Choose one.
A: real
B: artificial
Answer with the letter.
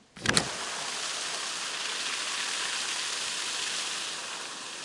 A